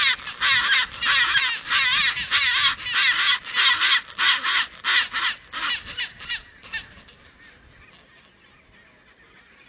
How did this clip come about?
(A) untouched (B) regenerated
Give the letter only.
A